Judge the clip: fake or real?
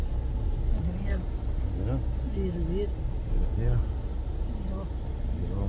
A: real